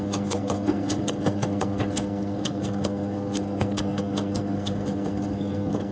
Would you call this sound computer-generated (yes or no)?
yes